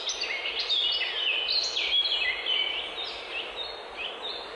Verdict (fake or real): real